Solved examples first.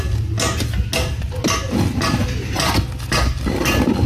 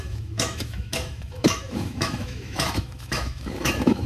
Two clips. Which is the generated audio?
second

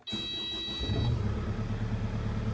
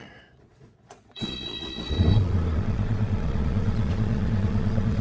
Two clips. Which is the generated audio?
second